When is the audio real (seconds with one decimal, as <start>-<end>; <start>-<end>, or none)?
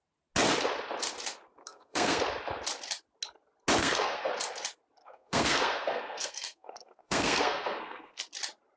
0.0-1.6; 2.2-3.8; 4.3-5.0; 8.2-8.8